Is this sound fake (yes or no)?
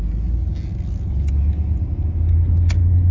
no